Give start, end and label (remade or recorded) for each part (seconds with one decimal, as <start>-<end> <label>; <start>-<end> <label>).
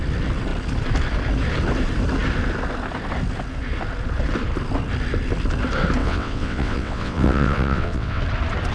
0.0-6.0 recorded; 6.0-8.2 remade; 8.2-8.7 recorded